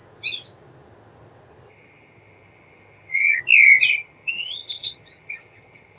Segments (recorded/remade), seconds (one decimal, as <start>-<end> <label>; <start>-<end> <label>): 0.0-1.7 recorded; 1.7-3.4 remade; 3.4-3.9 recorded; 3.9-6.0 remade